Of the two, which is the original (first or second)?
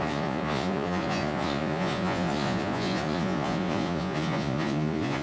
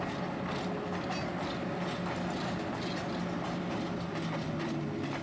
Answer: second